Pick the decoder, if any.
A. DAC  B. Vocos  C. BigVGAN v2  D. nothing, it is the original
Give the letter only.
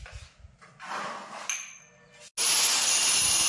D